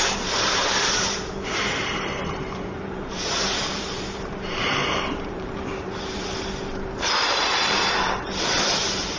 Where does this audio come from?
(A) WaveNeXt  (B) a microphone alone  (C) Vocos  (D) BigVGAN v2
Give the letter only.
D